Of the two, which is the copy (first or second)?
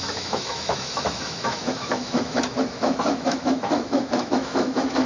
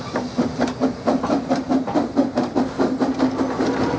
first